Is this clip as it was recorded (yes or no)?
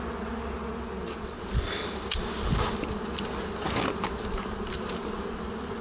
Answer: yes